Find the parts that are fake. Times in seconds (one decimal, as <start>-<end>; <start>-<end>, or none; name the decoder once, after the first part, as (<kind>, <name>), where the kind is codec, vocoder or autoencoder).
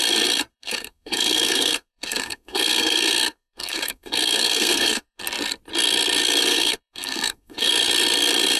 0.5-5.2 (codec, SNAC); 6.5-7.7